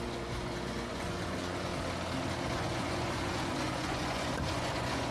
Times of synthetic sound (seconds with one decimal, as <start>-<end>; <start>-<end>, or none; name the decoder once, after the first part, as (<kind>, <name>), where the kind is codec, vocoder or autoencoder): 0.0-1.7 (vocoder, Vocos); 2.5-5.1